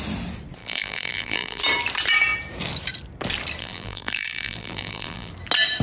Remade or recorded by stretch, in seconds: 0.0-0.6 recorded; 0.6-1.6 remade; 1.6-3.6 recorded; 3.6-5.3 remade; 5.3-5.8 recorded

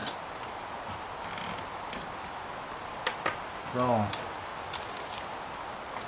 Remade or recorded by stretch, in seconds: 0.0-6.1 recorded